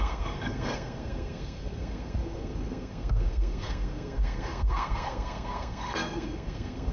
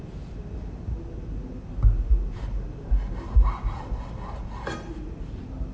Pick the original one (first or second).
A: second